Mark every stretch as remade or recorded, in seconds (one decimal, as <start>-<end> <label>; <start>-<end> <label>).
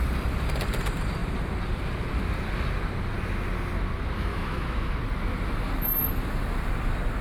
0.0-4.3 recorded; 4.3-4.9 remade; 4.9-7.2 recorded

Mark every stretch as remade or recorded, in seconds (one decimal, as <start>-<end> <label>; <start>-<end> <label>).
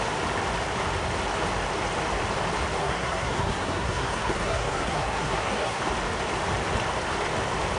0.0-2.8 recorded; 2.8-5.8 remade; 5.8-7.8 recorded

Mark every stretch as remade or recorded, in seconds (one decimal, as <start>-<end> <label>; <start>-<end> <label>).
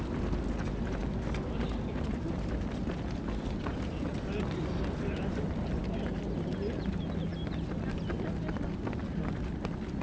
0.0-10.0 recorded